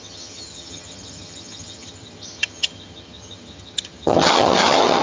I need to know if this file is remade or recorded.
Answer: remade